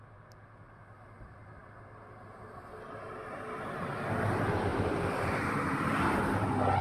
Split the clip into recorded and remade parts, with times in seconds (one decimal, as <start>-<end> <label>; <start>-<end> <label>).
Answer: 0.0-4.7 recorded; 4.7-6.0 remade; 6.0-6.8 recorded